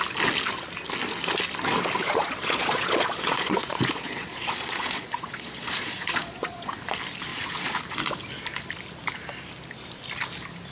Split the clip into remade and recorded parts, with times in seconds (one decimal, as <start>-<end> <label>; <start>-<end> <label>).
0.0-2.0 recorded; 2.0-6.8 remade; 6.8-7.3 recorded; 7.3-7.8 remade; 7.8-10.7 recorded